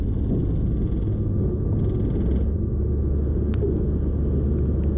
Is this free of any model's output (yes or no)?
yes